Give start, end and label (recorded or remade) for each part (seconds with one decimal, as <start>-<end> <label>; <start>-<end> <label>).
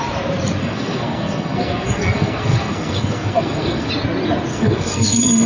0.0-0.6 recorded; 0.6-3.9 remade; 3.9-4.5 recorded; 4.5-5.5 remade